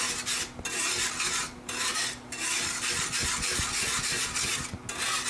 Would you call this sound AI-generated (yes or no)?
no